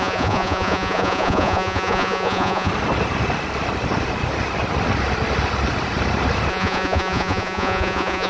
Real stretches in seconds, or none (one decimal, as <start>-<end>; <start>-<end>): 2.7-6.5